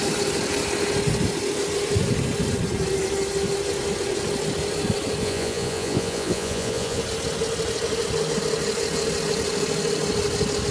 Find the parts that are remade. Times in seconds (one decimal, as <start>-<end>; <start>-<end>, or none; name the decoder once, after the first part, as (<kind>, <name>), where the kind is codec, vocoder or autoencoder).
5.2-7.0 (vocoder, Vocos)